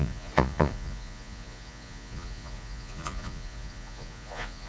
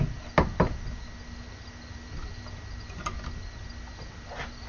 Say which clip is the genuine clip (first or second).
second